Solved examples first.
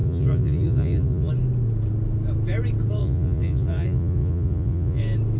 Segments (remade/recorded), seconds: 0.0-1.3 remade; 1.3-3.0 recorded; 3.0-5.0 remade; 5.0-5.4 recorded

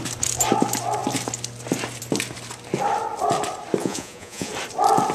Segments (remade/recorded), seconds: 0.0-3.8 recorded; 3.8-4.5 remade; 4.5-5.1 recorded

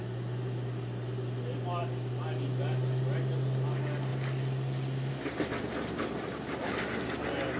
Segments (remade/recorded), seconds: 0.0-7.6 recorded

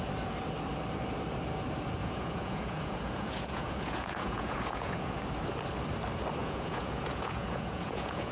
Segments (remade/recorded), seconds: 0.0-2.0 recorded; 2.0-5.1 remade; 5.1-6.4 recorded; 6.4-8.3 remade

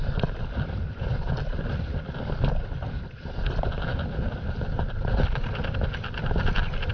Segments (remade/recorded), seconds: 0.0-6.9 recorded

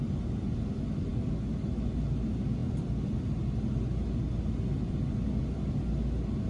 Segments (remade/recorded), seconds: 0.0-6.5 recorded

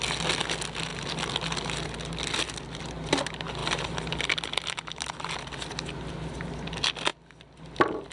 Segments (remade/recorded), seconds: 0.0-8.1 recorded

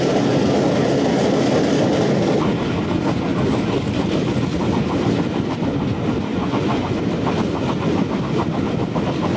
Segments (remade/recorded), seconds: 0.0-6.3 recorded; 6.3-7.0 remade; 7.0-9.4 recorded